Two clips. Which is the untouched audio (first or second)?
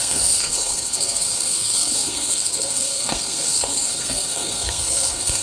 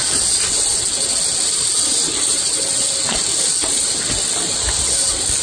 second